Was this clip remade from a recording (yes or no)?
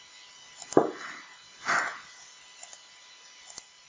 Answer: no